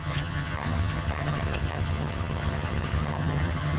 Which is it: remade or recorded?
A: remade